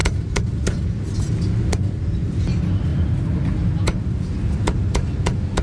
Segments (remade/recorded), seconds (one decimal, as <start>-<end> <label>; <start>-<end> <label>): 0.0-5.6 recorded